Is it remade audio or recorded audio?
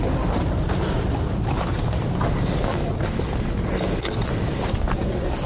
recorded